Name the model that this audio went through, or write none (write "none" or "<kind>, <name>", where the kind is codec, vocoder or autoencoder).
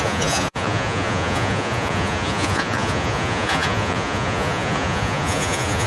vocoder, Vocos